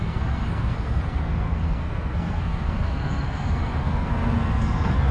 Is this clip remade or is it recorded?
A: remade